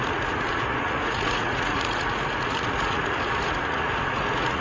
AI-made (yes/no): yes